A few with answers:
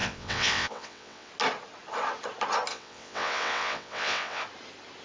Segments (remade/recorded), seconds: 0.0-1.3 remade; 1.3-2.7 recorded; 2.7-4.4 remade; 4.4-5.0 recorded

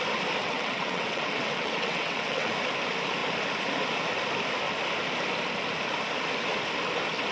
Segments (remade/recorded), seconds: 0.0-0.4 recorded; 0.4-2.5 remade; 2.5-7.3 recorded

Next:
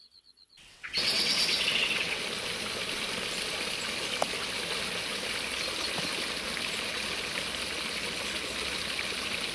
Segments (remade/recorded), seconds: 0.0-2.2 remade; 2.2-9.5 recorded